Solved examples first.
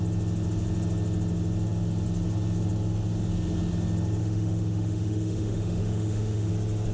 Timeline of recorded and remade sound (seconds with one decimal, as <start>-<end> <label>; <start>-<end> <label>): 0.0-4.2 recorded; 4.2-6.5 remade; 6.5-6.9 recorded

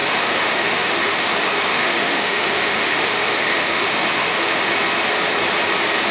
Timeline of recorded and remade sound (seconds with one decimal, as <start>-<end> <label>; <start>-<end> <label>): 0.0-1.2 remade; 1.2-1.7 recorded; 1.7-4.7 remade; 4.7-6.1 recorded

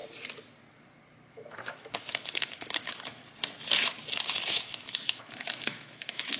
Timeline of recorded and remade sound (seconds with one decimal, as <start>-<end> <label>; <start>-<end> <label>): 0.0-1.3 recorded; 1.3-3.2 remade; 3.2-4.1 recorded; 4.1-6.4 remade

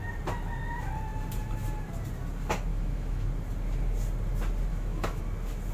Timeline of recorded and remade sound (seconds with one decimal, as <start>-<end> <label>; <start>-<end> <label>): 0.0-2.7 recorded; 2.7-3.3 remade; 3.3-4.7 recorded; 4.7-5.2 remade; 5.2-5.7 recorded